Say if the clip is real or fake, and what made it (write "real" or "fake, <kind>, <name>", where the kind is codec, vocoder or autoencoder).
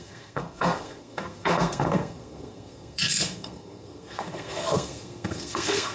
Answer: fake, codec, SNAC